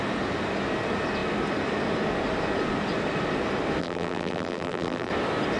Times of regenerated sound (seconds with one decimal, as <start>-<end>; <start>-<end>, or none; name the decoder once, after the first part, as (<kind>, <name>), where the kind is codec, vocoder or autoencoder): 3.8-5.1 (vocoder, BigVGAN v2)